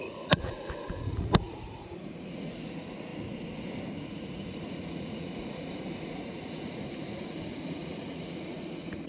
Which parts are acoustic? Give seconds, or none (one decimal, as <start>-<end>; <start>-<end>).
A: 3.1-4.0